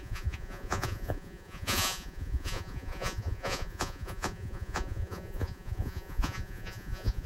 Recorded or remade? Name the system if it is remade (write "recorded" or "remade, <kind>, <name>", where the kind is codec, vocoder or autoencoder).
remade, vocoder, Vocos